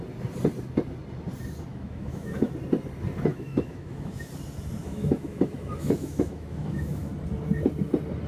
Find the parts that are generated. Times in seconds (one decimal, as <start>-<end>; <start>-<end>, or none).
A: 1.7-2.5; 3.3-4.3; 4.8-7.1